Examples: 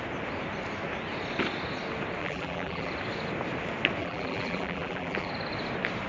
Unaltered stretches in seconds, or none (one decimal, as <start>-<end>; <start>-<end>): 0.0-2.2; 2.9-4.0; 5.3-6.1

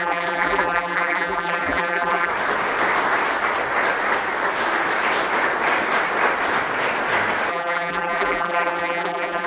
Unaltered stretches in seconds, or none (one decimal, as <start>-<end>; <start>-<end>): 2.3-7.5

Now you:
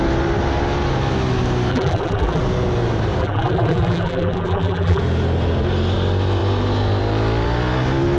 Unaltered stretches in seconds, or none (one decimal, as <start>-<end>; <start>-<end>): 0.0-1.7; 2.4-3.2; 5.0-8.2

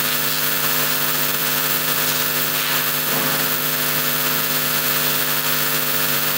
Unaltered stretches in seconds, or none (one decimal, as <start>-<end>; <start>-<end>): 0.0-6.4

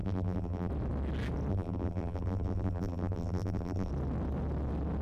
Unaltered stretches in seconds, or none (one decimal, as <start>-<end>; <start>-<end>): 0.7-1.5; 3.9-5.0

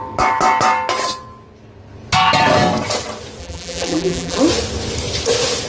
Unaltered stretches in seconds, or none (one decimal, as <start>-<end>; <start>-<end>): 0.0-3.4; 4.4-5.7

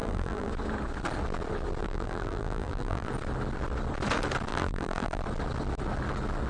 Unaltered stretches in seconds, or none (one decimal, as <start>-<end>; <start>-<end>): 0.5-1.8; 3.1-4.5; 5.2-6.5